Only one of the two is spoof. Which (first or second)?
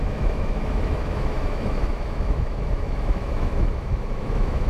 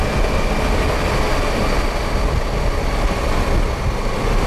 first